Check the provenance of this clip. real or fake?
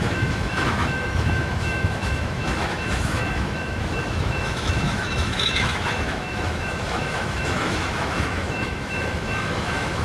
fake